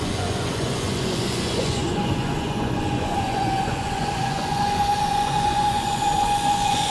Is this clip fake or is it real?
fake